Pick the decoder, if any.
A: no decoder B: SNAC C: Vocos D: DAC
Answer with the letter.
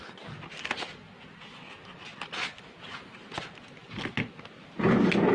A